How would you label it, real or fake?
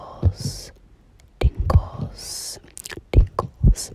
real